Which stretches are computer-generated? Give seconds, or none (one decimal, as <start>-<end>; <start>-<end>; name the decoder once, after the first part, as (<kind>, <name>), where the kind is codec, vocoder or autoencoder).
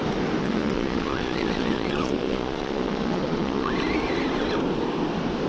0.4-3.7 (vocoder, Vocos)